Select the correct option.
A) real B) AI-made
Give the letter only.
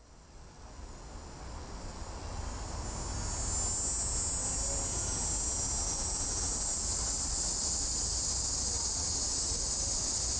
A